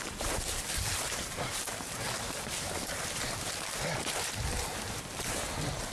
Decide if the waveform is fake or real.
fake